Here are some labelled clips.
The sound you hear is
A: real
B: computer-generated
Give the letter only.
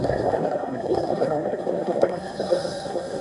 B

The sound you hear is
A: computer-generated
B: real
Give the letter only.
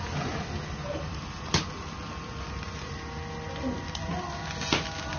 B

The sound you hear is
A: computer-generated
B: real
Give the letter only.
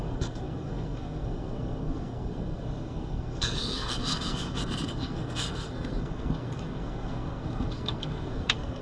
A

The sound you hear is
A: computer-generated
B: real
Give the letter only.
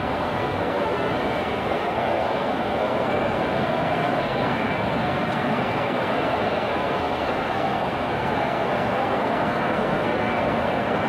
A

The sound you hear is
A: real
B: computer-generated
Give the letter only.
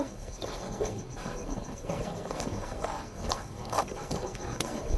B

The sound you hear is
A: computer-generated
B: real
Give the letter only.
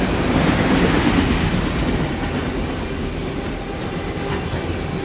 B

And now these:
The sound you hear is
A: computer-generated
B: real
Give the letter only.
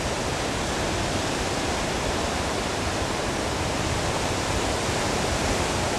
B